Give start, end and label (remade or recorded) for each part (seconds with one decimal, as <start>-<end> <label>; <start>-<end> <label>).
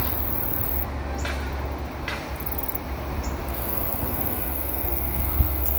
0.0-3.5 recorded; 3.5-5.8 remade